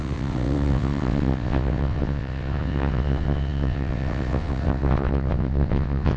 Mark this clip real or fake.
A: fake